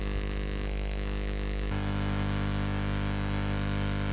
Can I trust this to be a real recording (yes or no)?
no